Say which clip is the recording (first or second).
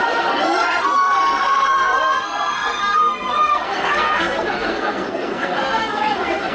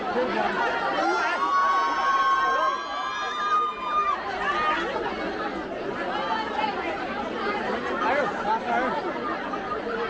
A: second